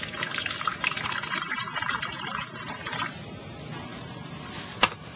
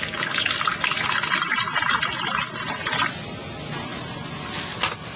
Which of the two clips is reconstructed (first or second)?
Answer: first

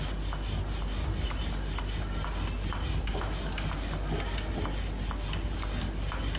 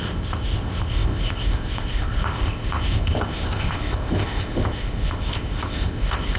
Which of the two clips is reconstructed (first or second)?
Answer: second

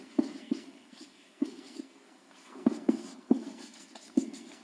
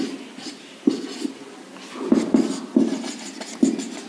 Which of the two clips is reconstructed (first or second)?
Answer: first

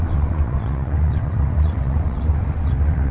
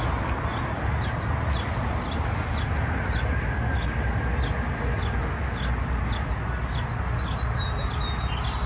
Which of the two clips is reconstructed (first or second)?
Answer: first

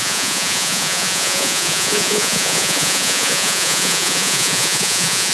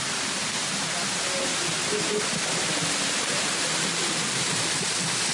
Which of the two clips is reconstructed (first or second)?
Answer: first